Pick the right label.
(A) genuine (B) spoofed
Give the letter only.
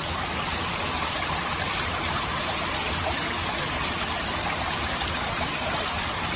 A